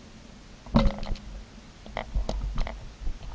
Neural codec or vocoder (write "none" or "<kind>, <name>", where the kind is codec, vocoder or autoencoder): none